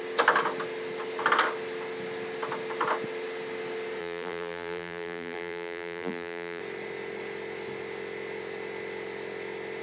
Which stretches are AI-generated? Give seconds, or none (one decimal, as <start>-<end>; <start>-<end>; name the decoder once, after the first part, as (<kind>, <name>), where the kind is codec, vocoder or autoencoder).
4.0-6.6 (vocoder, BigVGAN v2)